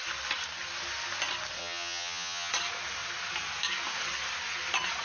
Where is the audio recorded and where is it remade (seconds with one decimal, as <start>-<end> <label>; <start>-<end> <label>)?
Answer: 0.0-1.6 recorded; 1.6-2.5 remade; 2.5-5.0 recorded